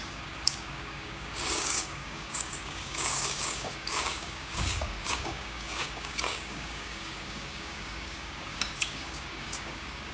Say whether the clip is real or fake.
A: fake